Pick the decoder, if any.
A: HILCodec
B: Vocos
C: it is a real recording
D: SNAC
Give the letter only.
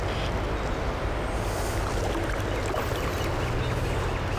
C